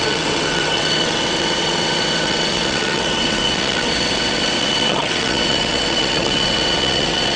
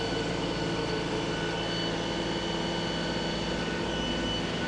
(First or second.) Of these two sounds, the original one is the second